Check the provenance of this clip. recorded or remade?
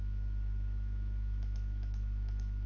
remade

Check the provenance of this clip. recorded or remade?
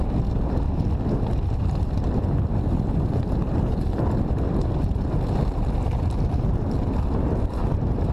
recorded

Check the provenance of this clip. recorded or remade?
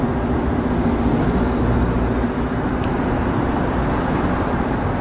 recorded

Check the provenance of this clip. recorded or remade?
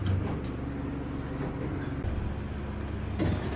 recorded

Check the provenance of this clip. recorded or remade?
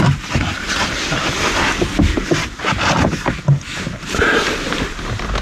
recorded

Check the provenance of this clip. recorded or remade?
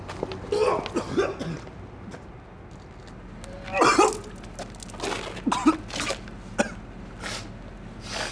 recorded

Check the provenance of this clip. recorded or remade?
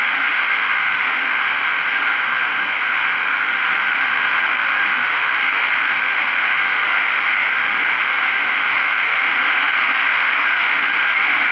remade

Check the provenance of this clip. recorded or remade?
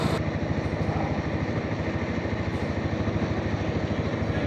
recorded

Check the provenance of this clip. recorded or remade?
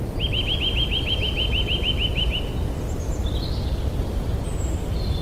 recorded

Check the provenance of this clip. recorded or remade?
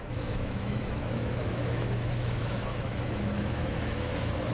remade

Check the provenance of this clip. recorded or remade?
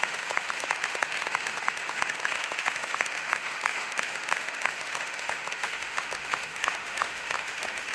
remade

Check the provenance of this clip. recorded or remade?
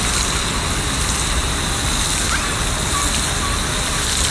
recorded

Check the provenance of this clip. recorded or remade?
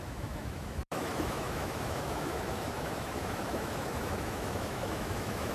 remade